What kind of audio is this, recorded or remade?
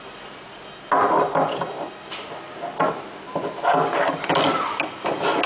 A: recorded